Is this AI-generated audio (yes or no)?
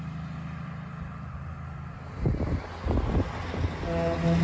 no